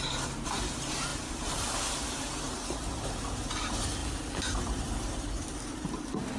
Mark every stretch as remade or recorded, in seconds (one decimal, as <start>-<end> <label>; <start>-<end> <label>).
0.0-4.0 remade; 4.0-4.6 recorded; 4.6-6.4 remade